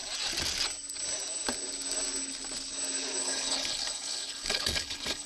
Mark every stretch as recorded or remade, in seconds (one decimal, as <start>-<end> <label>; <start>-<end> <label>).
0.0-3.2 recorded; 3.2-5.3 remade